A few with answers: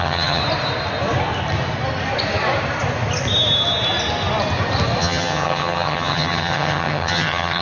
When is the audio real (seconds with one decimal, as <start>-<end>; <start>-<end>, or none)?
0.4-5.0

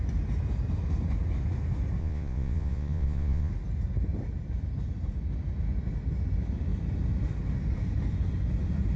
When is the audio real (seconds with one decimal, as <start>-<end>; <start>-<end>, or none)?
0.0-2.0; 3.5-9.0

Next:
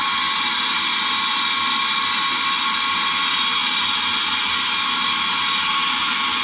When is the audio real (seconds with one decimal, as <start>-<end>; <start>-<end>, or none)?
0.0-6.4

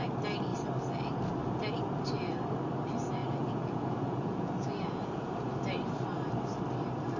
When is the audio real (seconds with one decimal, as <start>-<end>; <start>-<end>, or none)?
0.0-3.2; 5.4-7.2

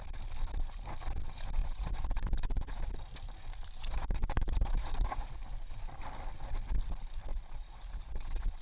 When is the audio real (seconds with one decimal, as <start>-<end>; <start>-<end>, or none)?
0.0-1.6; 2.9-3.8; 5.4-7.3

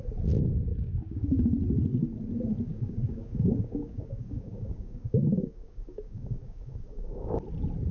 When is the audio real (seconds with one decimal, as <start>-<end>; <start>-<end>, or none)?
0.0-0.7; 1.4-2.7; 7.4-7.9

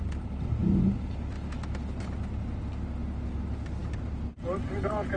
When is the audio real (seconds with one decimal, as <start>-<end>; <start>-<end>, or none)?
0.0-5.2

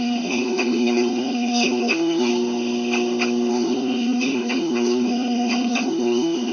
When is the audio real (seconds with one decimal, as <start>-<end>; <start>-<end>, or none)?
2.3-3.5